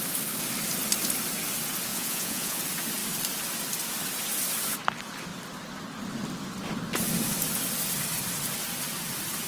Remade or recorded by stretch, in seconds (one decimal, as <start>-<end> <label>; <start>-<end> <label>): 0.0-1.9 recorded; 1.9-2.6 remade; 2.6-9.5 recorded